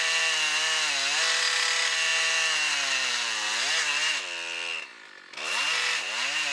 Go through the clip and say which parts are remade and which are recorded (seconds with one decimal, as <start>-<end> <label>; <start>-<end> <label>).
0.0-6.5 recorded